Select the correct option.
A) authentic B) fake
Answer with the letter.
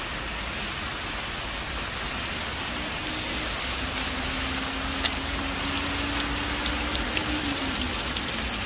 A